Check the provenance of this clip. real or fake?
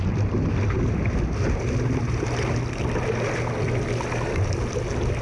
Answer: real